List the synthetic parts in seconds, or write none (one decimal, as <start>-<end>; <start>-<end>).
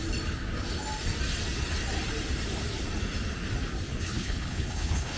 3.9-5.2